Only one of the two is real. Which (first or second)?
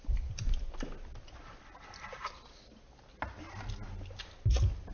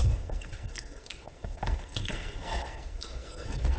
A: first